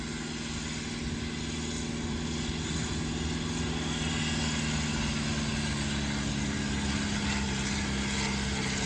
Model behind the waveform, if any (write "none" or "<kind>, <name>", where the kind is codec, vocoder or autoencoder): none